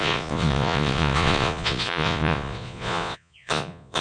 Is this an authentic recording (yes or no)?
no